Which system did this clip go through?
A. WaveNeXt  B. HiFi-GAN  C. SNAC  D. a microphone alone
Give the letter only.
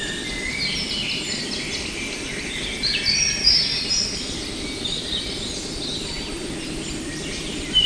D